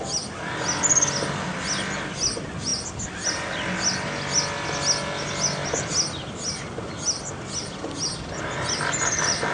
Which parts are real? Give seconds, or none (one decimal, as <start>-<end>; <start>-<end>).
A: 0.0-9.5